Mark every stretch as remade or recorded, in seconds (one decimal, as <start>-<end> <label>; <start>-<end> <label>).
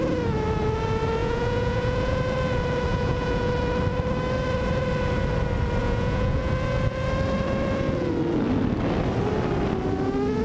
0.0-1.2 recorded; 1.2-2.2 remade; 2.2-2.9 recorded; 2.9-3.5 remade; 3.5-5.8 recorded; 5.8-6.5 remade; 6.5-10.4 recorded